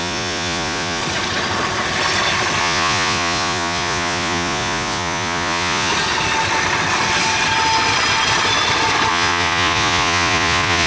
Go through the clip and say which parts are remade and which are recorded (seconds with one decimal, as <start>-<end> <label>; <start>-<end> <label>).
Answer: 0.0-1.0 remade; 1.0-2.6 recorded; 2.6-5.9 remade; 5.9-9.1 recorded; 9.1-10.9 remade